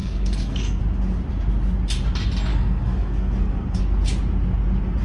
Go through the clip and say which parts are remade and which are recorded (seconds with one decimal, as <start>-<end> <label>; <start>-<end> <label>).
0.0-0.8 remade; 0.8-2.5 recorded; 2.5-3.8 remade; 3.8-5.0 recorded